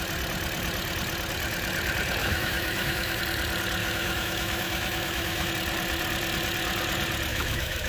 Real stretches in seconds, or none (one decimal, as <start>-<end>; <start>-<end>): 0.0-2.2; 3.2-3.8; 5.5-7.3